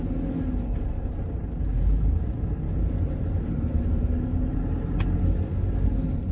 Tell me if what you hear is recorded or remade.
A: recorded